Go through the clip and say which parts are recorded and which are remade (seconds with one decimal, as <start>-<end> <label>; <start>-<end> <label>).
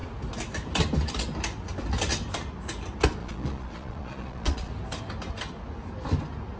0.0-3.2 recorded; 3.2-4.7 remade; 4.7-6.6 recorded